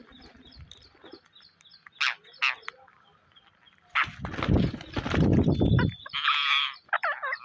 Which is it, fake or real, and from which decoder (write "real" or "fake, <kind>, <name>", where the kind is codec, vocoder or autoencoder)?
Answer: real